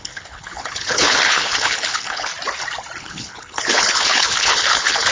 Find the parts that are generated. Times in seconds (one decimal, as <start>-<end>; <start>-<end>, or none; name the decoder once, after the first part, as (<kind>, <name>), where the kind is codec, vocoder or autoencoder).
0.0-2.3 (codec, HILCodec); 3.0-5.1